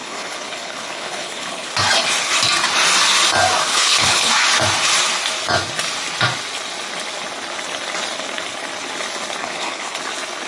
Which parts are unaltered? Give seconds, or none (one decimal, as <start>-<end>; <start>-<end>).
1.7-3.7; 4.3-9.4; 10.0-10.5